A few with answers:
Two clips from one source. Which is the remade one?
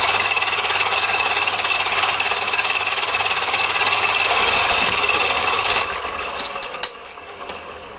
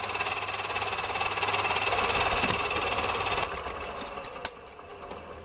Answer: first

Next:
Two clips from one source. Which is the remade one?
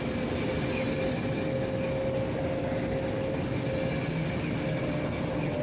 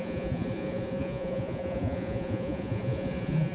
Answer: second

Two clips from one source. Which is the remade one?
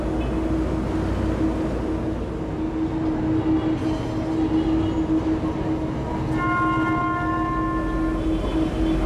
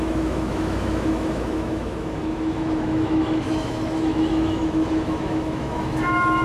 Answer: second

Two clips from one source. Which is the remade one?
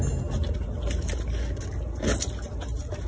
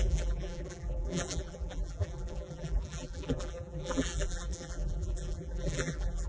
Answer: second